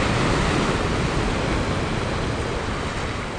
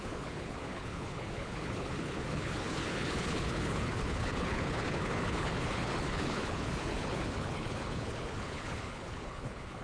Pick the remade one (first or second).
second